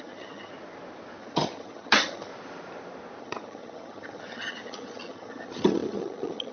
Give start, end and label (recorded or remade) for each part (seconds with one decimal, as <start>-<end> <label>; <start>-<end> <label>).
0.0-0.5 remade; 0.5-1.2 recorded; 1.2-2.3 remade; 2.3-3.2 recorded; 3.2-6.5 remade